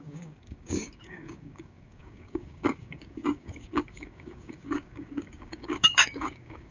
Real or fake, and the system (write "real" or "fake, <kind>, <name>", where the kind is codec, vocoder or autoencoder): fake, codec, DAC